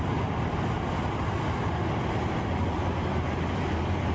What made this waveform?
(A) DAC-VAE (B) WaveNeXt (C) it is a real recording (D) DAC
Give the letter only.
C